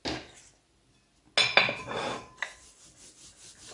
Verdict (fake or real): real